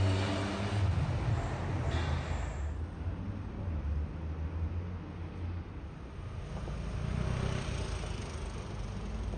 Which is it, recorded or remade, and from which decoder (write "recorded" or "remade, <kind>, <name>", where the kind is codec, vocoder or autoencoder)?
recorded